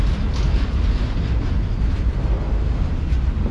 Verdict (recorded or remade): recorded